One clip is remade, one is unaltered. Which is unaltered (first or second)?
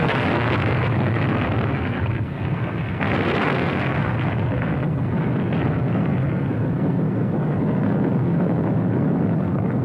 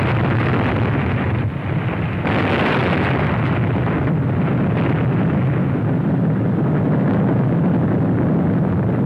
second